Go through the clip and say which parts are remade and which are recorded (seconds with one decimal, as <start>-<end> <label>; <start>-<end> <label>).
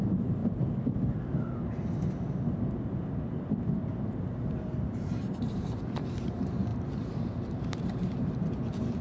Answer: 0.0-0.4 remade; 0.4-4.2 recorded; 4.2-9.0 remade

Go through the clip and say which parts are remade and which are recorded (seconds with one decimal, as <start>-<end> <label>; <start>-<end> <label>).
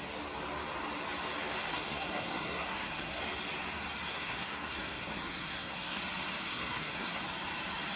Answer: 0.0-1.7 recorded; 1.7-3.2 remade; 3.2-4.1 recorded; 4.1-6.0 remade; 6.0-6.5 recorded; 6.5-7.2 remade; 7.2-8.0 recorded